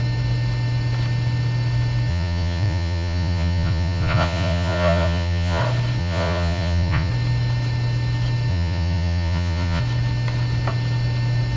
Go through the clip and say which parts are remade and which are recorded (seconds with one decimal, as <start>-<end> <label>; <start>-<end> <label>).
0.0-2.1 recorded; 2.1-5.6 remade; 5.6-6.0 recorded; 6.0-7.1 remade; 7.1-8.5 recorded; 8.5-9.8 remade; 9.8-11.6 recorded